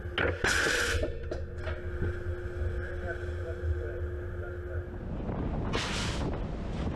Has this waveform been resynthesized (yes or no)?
no